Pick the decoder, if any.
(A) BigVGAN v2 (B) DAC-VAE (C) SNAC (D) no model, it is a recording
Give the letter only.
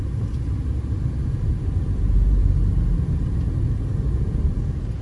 A